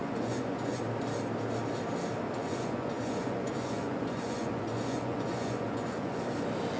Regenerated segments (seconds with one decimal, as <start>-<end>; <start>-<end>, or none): 0.0-0.8; 2.4-6.2